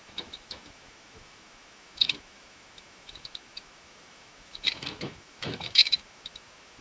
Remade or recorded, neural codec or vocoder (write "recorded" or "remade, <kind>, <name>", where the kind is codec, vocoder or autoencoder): remade, autoencoder, DAC-VAE